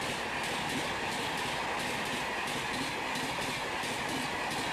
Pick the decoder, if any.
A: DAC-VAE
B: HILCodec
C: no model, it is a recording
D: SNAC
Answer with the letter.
C